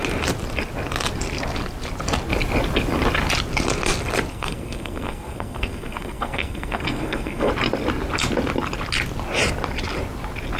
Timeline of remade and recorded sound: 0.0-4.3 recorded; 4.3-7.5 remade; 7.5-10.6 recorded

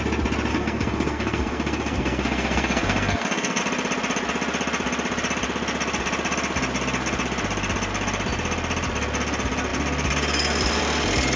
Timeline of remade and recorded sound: 0.0-0.5 recorded; 0.5-3.6 remade; 3.6-11.4 recorded